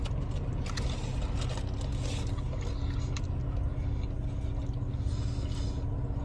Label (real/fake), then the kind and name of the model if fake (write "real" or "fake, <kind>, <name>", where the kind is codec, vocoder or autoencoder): real